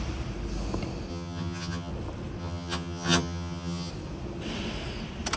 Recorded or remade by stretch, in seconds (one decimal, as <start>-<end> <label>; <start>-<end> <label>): 0.0-1.1 recorded; 1.1-1.9 remade; 1.9-2.4 recorded; 2.4-3.9 remade; 3.9-5.4 recorded